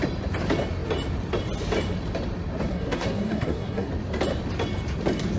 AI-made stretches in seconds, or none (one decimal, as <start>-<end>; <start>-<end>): 2.7-3.9